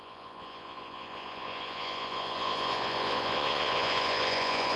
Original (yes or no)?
no